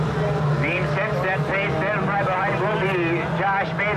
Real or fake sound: real